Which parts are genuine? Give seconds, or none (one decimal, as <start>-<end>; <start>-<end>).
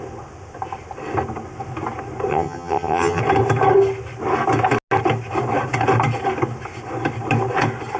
0.0-2.3; 3.2-8.0